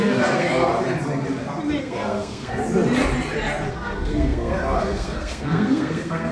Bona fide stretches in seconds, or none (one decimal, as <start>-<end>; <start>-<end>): 0.7-1.8; 2.6-3.7